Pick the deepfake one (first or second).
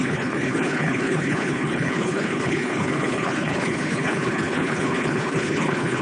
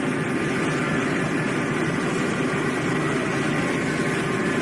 first